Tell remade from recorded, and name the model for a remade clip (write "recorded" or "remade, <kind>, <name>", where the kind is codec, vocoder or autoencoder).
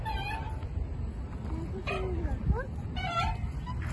recorded